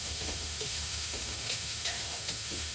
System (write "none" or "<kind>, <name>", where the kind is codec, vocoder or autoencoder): autoencoder, DAC-VAE